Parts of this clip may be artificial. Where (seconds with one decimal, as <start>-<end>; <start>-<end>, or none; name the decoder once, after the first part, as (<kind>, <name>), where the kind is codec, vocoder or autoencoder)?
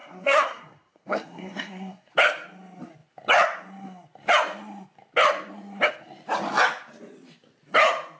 0.0-2.1 (codec, SNAC)